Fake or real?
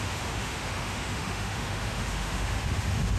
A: fake